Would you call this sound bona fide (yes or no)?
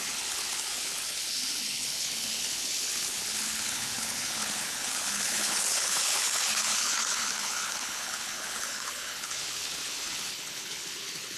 no